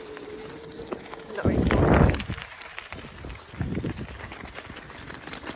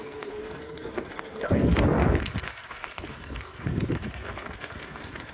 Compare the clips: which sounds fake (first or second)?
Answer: second